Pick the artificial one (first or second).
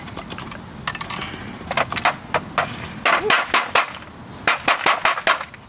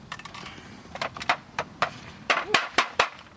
second